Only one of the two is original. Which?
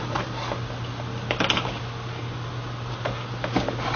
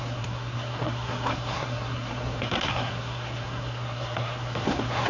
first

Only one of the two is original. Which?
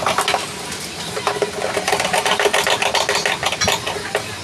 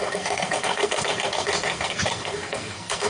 first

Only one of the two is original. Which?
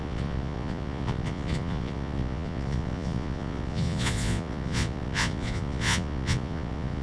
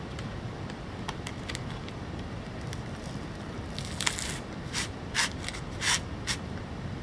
second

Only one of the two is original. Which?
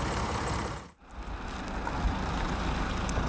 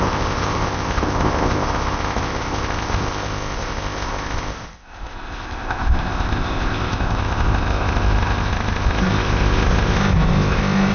first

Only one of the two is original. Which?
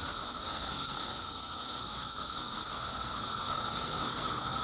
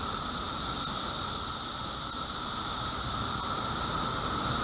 second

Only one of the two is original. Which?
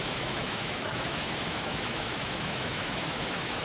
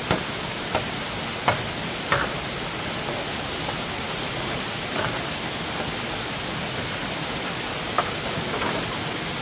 second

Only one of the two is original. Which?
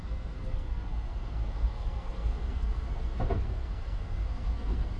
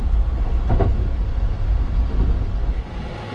second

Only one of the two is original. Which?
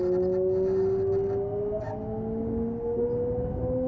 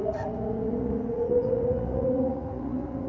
first